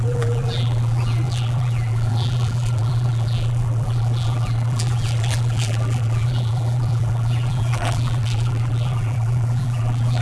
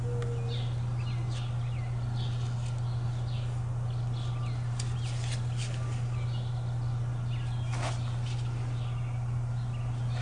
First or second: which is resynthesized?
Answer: first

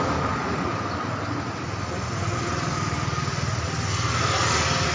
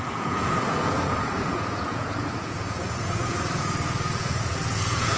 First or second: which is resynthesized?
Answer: second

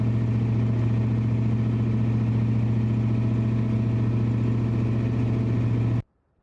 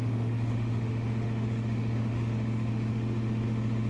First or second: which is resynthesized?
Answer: second